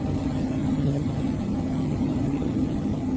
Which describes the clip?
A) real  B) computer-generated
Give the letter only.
B